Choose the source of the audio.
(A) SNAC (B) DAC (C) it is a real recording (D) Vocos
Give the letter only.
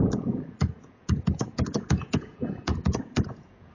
D